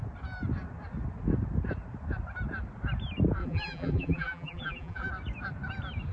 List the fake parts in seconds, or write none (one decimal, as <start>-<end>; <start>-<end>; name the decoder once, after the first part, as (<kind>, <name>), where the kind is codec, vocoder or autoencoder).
3.4-5.1 (vocoder, BigVGAN v2)